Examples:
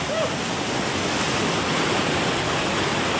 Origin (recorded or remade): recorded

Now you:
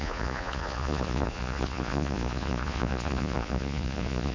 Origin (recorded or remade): remade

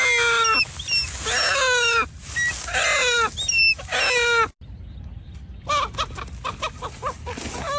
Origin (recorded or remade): recorded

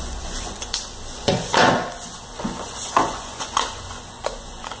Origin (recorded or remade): remade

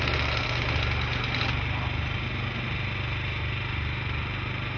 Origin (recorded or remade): recorded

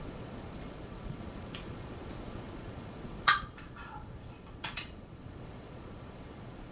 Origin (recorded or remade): remade